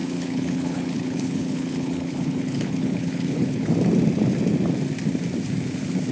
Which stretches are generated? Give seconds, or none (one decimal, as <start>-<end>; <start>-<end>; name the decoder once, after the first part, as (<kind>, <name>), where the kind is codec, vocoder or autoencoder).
0.0-3.7 (codec, HILCodec)